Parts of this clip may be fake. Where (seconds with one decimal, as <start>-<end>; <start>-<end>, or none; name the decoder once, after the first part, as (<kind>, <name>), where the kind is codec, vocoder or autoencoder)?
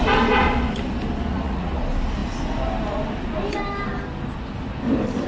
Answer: 1.3-1.8 (vocoder, Vocos)